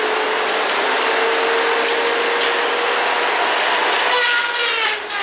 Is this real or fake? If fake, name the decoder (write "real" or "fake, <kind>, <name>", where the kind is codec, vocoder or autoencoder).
real